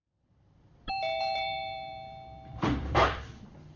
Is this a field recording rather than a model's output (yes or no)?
no